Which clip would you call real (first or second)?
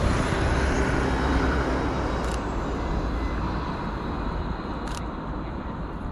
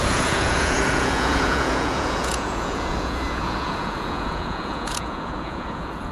first